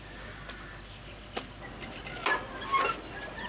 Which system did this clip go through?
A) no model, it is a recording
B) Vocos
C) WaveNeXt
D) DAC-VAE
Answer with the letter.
A